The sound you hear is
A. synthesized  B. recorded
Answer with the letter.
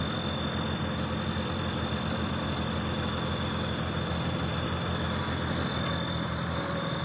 A